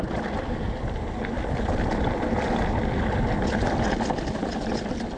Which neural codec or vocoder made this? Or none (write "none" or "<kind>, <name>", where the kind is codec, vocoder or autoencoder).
vocoder, BigVGAN v2